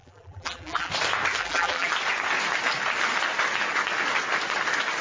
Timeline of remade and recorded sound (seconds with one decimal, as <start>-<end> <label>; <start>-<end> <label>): 0.0-0.9 remade; 0.9-1.4 recorded; 1.4-1.9 remade; 1.9-5.0 recorded